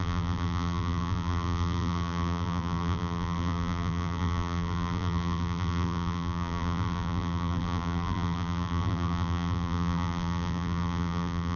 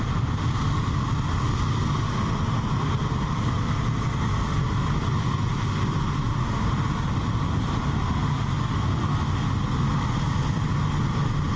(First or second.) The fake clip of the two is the first